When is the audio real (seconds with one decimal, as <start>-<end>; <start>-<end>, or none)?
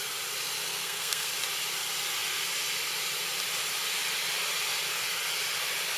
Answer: 0.0-0.7; 1.3-6.0